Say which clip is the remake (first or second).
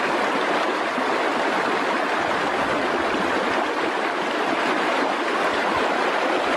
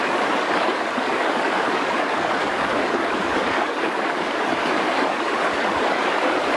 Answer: second